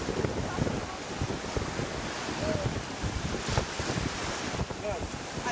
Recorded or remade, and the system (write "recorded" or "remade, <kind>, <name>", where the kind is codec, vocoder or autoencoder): recorded